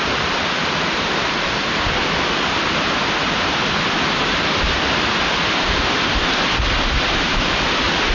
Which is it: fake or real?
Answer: real